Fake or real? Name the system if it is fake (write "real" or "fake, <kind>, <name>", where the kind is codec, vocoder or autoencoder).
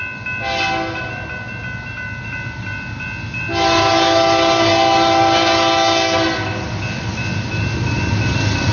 real